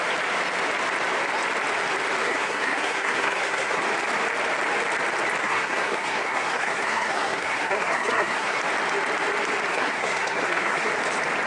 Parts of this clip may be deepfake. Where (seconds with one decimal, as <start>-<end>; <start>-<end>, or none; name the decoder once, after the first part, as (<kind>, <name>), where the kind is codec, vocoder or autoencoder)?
2.2-3.8 (codec, SNAC); 5.4-8.6; 9.7-10.9